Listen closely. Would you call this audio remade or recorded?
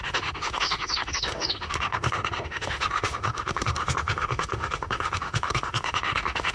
remade